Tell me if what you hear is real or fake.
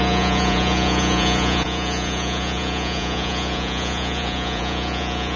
fake